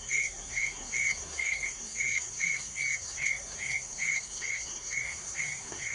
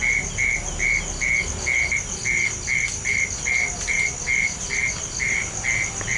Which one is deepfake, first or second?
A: first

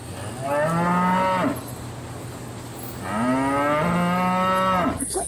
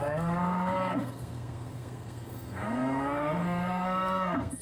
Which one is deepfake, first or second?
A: second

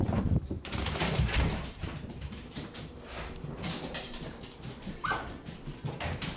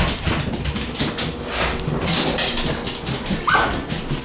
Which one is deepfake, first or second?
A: first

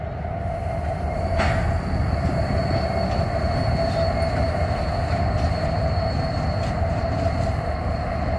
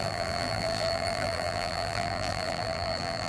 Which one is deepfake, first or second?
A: second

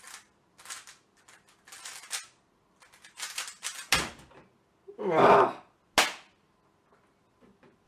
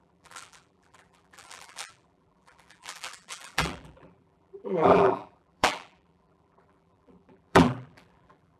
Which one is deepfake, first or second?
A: second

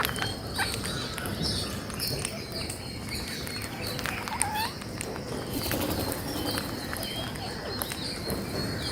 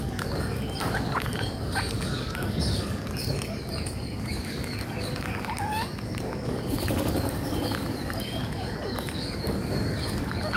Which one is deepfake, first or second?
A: second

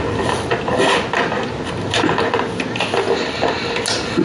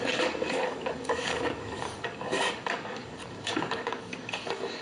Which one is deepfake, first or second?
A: second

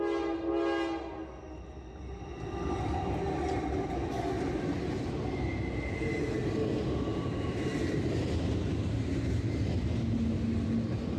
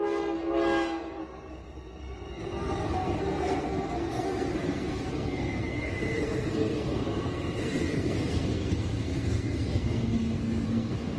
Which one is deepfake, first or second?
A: second